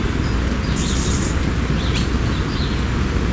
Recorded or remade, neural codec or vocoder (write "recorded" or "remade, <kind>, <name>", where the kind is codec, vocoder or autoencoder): recorded